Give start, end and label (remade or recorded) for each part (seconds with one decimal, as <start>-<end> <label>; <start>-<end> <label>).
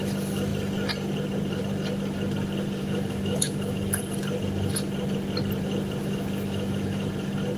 0.0-2.8 recorded; 2.8-4.0 remade; 4.0-6.0 recorded; 6.0-7.1 remade; 7.1-7.6 recorded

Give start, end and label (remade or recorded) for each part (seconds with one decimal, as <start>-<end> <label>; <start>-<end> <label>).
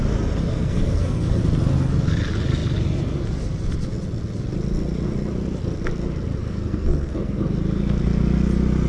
0.0-0.5 recorded; 0.5-1.4 remade; 1.4-6.4 recorded; 6.4-7.4 remade; 7.4-8.9 recorded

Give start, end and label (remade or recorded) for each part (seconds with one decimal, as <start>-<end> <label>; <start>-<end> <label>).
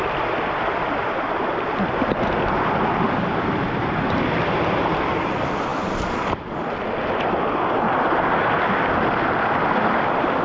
0.0-10.4 recorded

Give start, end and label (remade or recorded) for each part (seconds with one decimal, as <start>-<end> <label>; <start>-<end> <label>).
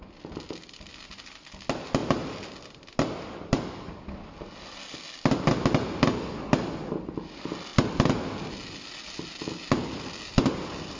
0.0-11.0 recorded